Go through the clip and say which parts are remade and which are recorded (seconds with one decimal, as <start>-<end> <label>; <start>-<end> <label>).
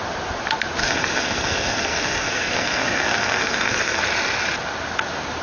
0.0-0.8 recorded; 0.8-4.0 remade; 4.0-5.4 recorded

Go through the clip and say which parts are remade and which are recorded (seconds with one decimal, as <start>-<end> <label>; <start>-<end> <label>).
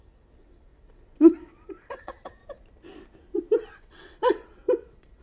0.0-2.4 remade; 2.4-3.7 recorded; 3.7-5.2 remade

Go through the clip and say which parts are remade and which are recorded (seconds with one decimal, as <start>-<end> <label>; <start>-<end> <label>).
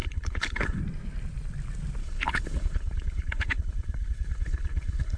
0.0-0.8 remade; 0.8-2.0 recorded; 2.0-5.2 remade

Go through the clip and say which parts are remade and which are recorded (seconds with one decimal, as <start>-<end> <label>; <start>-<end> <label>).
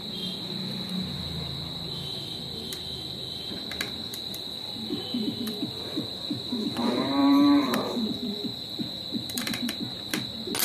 0.0-4.1 recorded; 4.1-6.1 remade; 6.1-7.2 recorded; 7.2-9.7 remade; 9.7-10.6 recorded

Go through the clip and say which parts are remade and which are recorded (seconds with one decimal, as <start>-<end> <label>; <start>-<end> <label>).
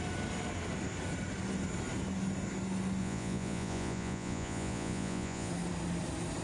0.0-3.0 recorded; 3.0-5.5 remade; 5.5-6.4 recorded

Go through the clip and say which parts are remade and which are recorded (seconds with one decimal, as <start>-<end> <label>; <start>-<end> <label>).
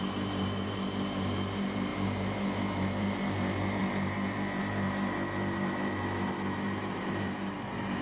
0.0-8.0 remade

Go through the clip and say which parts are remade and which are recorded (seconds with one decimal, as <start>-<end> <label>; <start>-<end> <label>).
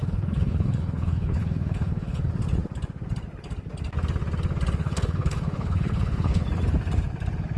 0.0-2.3 remade; 2.3-4.8 recorded; 4.8-6.4 remade; 6.4-7.6 recorded